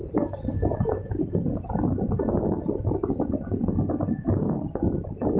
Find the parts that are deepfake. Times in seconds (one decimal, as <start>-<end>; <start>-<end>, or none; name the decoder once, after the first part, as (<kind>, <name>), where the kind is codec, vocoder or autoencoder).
none